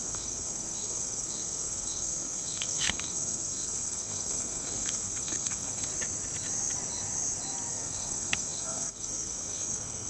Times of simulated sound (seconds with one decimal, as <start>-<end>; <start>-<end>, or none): 0.0-5.9; 7.7-10.1